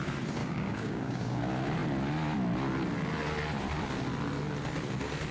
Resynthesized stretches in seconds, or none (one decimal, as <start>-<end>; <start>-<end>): 0.4-1.4